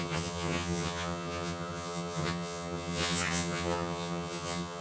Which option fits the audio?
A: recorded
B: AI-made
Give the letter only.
B